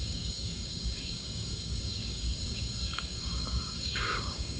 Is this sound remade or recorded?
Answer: remade